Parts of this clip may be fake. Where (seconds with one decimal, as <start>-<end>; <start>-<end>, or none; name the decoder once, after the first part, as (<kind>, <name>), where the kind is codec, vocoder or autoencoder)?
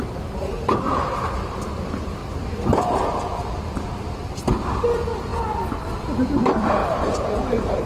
2.2-3.2 (vocoder, BigVGAN v2); 6.8-7.9